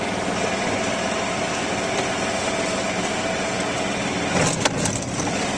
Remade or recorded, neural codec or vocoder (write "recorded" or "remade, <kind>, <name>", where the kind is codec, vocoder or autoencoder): recorded